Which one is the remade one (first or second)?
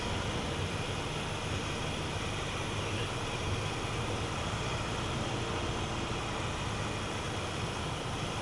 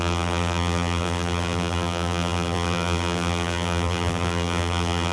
second